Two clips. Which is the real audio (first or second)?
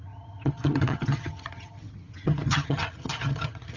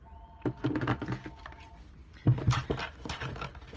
second